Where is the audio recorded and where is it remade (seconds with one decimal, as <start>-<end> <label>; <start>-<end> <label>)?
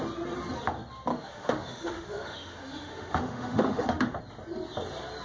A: 0.0-1.1 recorded; 1.1-4.2 remade; 4.2-5.2 recorded